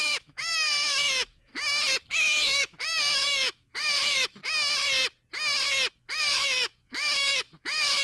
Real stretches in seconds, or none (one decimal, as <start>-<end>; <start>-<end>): 1.5-2.1; 4.4-5.9